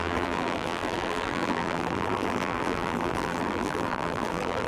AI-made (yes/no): yes